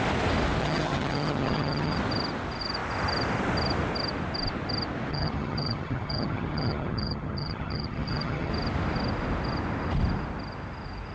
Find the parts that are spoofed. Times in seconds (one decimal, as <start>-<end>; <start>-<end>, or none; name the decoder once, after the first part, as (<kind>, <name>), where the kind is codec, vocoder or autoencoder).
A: 0.6-2.0 (vocoder, HiFi-GAN); 5.1-8.5